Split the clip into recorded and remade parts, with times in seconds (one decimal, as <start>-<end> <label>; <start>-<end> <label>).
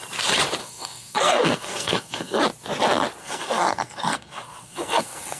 0.0-0.6 recorded; 0.6-2.4 remade; 2.4-3.2 recorded; 3.2-5.4 remade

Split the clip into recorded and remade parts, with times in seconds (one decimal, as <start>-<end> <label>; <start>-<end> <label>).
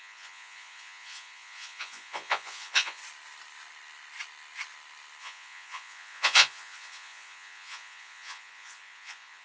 0.0-3.0 remade; 3.0-5.2 recorded; 5.2-9.4 remade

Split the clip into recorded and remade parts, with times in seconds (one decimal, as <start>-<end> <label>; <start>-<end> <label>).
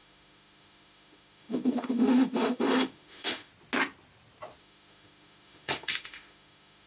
0.0-3.5 remade; 3.5-4.6 recorded; 4.6-6.9 remade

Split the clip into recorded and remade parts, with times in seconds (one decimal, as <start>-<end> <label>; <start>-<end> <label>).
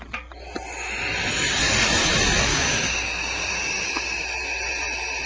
0.0-2.5 recorded; 2.5-4.2 remade; 4.2-5.3 recorded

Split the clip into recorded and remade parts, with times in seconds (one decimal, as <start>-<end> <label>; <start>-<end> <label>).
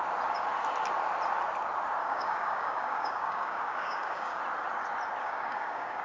0.0-2.0 recorded; 2.0-4.4 remade; 4.4-5.2 recorded; 5.2-6.0 remade